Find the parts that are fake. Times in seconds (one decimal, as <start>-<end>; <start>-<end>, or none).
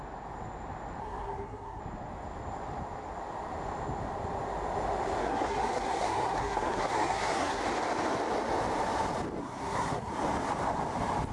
1.0-1.8; 5.2-7.6; 9.4-10.1